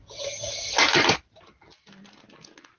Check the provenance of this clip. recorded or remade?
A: recorded